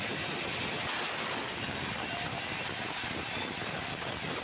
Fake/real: real